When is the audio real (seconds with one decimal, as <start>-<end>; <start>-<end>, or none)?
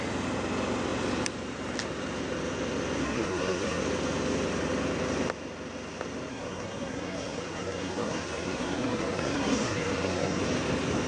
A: 0.0-3.0; 3.8-6.3; 10.4-11.1